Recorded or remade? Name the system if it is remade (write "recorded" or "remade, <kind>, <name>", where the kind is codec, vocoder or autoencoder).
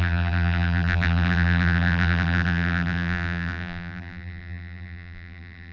remade, vocoder, BigVGAN v2